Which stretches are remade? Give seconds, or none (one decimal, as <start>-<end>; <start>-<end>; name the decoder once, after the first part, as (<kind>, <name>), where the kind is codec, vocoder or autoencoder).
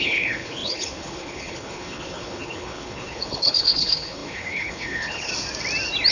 0.0-5.3 (codec, HILCodec)